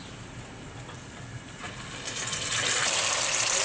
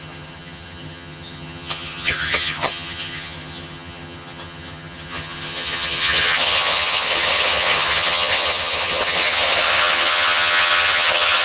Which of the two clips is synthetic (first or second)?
second